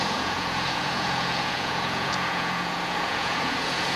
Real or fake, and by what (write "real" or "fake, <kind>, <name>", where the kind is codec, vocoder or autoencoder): fake, vocoder, Vocos